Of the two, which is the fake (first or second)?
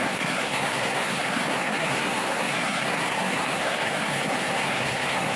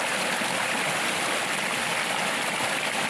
first